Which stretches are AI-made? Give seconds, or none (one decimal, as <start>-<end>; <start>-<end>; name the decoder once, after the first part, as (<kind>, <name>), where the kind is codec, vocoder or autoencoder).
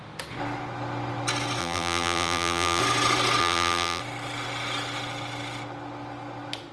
1.6-2.8 (vocoder, BigVGAN v2); 3.4-4.0